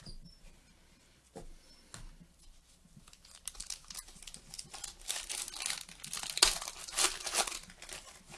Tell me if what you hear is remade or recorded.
recorded